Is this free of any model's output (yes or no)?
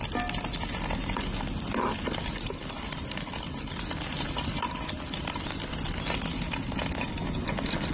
yes